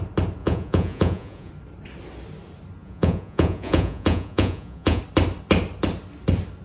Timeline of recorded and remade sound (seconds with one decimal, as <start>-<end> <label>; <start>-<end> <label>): 0.0-0.4 recorded; 0.4-1.5 remade; 1.5-2.8 recorded; 2.8-5.0 remade; 5.0-6.6 recorded